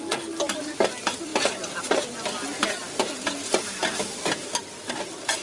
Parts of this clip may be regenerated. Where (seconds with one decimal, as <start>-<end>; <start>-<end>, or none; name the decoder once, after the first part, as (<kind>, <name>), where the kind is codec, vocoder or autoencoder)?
none